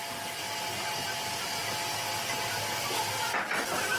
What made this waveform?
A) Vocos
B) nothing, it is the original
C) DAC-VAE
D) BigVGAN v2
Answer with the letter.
B